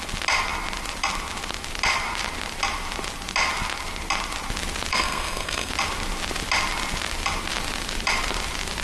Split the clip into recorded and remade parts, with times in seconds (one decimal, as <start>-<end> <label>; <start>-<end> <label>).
0.0-4.9 recorded; 4.9-5.7 remade; 5.7-8.8 recorded